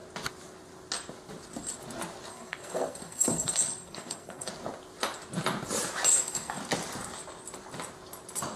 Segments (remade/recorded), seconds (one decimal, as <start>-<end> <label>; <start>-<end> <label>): 0.0-2.3 recorded; 2.3-4.5 remade; 4.5-6.1 recorded; 6.1-6.6 remade; 6.6-8.6 recorded